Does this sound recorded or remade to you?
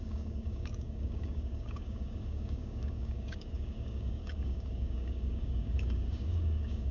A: remade